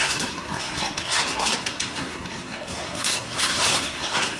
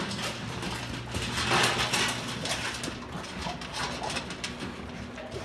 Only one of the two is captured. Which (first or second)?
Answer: second